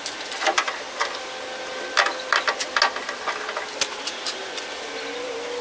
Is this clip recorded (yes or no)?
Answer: yes